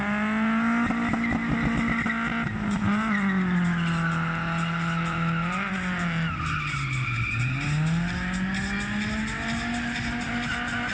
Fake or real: real